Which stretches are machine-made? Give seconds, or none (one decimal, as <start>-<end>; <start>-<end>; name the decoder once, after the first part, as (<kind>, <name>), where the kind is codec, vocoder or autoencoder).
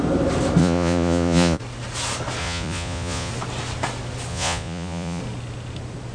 0.6-1.6 (vocoder, Vocos); 2.4-3.3; 4.3-5.2